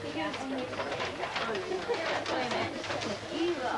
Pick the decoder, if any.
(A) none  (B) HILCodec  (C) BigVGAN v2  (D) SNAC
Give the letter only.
A